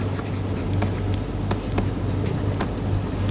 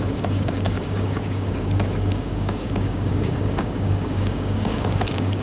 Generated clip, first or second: second